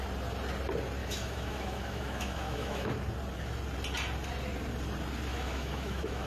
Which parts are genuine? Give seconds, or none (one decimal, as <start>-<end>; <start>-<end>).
0.0-1.0; 2.9-5.3